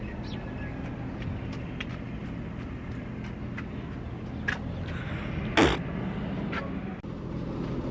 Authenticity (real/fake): real